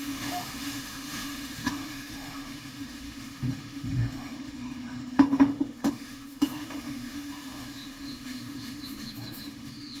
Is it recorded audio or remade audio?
remade